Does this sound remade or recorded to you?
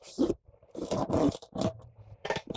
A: remade